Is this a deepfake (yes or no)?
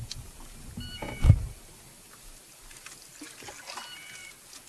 no